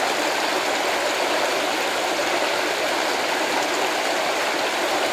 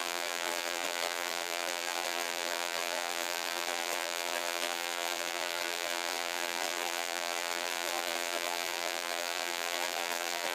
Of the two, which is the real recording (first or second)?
first